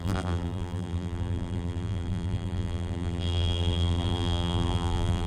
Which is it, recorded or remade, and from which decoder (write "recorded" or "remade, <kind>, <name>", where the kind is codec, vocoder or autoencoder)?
remade, vocoder, BigVGAN v2